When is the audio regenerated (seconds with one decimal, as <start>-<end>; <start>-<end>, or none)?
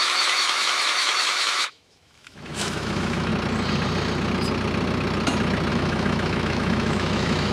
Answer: 0.0-3.3; 5.7-7.5